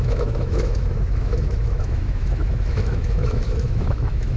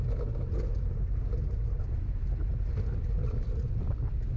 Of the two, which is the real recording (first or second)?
second